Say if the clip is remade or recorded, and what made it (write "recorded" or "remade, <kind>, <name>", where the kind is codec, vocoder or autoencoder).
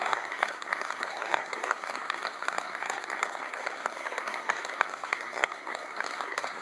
remade, codec, SNAC